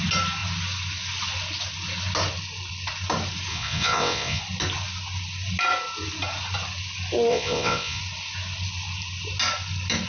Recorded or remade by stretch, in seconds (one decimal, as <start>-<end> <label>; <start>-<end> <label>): 0.0-3.5 recorded; 3.5-4.4 remade; 4.4-7.3 recorded; 7.3-8.0 remade; 8.0-10.1 recorded